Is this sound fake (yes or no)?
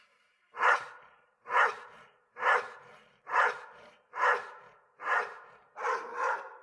yes